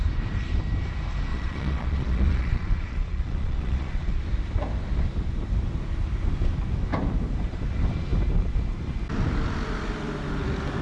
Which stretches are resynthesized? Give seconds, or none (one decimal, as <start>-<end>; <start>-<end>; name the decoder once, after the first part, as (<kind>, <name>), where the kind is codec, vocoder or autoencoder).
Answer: 1.3-4.2 (vocoder, Vocos)